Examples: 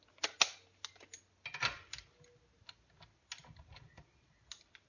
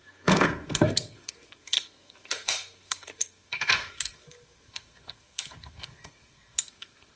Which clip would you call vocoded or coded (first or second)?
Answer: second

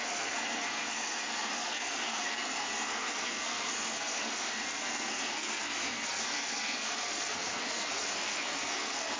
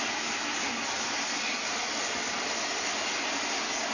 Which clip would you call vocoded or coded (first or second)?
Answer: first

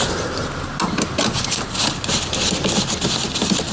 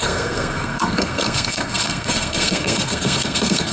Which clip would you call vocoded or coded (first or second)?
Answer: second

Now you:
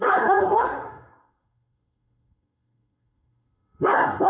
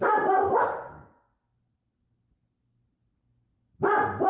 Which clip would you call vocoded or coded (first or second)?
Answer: first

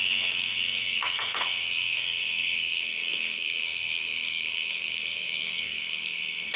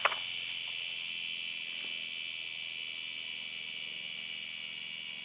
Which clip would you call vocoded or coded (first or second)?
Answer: first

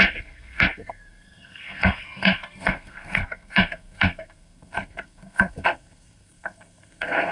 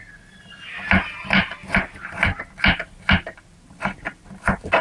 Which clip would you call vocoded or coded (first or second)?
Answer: first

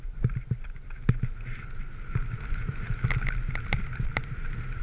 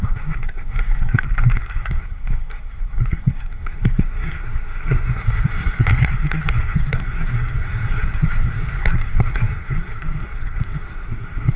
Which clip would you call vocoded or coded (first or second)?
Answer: second